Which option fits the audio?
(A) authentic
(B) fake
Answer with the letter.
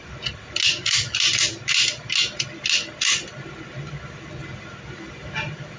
A